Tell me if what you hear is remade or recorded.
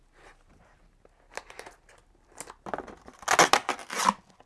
recorded